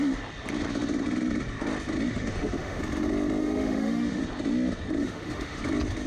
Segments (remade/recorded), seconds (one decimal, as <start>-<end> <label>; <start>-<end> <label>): 0.0-2.1 recorded; 2.1-2.8 remade; 2.8-3.4 recorded; 3.4-4.2 remade; 4.2-5.0 recorded; 5.0-5.6 remade; 5.6-6.1 recorded